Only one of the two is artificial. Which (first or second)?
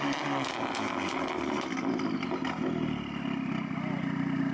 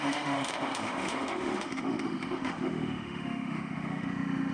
second